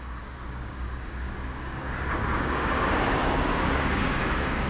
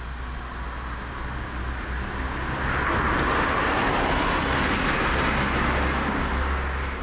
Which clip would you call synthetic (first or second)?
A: first